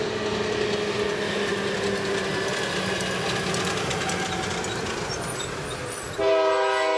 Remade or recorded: recorded